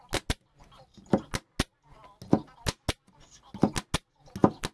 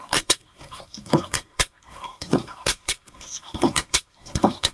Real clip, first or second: first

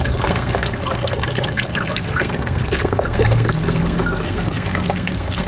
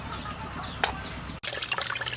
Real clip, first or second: second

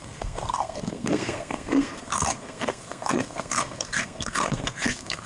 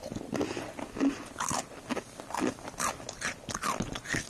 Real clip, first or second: second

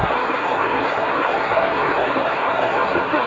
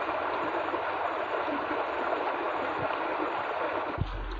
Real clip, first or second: second